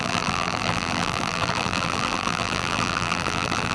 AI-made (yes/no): yes